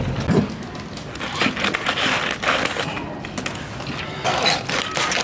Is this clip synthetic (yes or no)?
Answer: no